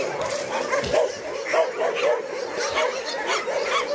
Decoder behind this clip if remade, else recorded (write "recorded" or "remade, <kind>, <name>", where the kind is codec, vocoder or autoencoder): recorded